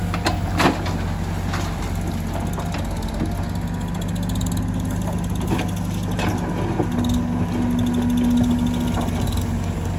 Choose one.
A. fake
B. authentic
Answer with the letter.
B